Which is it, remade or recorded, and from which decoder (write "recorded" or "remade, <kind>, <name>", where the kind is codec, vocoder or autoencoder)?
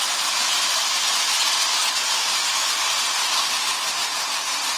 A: recorded